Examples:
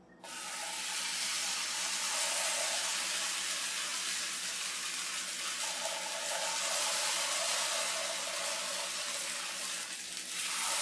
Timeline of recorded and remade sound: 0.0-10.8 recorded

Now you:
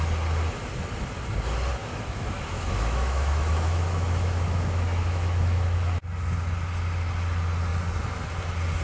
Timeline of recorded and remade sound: 0.0-1.8 recorded; 1.8-6.0 remade; 6.0-8.8 recorded

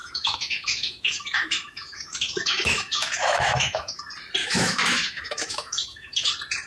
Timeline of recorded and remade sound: 0.0-4.0 remade; 4.0-4.4 recorded; 4.4-6.3 remade; 6.3-6.7 recorded